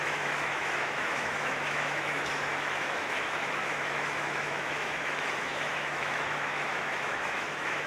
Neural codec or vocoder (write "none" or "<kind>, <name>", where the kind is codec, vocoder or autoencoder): autoencoder, DAC-VAE